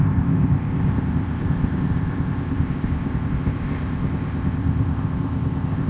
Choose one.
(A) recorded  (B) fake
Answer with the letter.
B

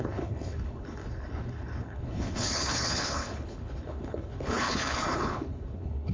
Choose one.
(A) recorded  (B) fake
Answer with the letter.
B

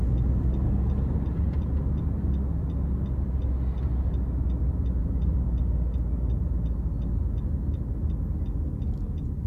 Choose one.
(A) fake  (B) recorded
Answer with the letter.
B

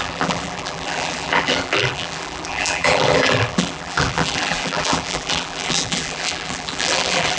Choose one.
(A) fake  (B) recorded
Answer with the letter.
A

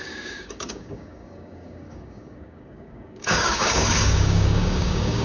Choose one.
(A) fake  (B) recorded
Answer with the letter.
A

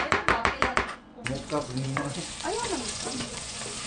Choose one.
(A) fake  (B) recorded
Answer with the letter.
A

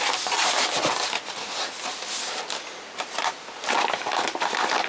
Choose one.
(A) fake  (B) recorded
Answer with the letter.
B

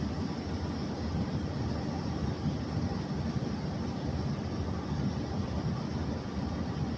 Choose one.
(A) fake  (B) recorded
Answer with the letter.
B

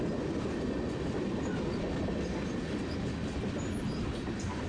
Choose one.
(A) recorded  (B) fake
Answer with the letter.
A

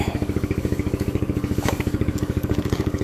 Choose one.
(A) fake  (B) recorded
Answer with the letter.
A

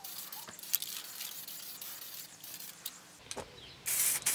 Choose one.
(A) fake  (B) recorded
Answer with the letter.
B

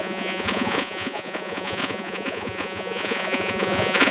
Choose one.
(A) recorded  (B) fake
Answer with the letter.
B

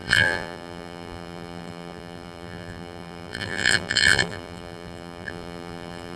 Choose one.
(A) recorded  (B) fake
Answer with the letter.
B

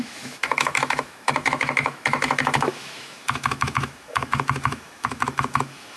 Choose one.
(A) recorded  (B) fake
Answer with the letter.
B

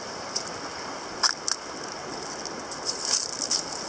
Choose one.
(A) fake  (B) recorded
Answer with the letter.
B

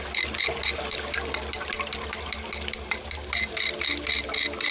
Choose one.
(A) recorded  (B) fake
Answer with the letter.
A